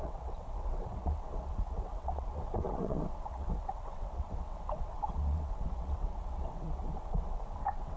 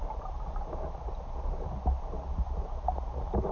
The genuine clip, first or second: second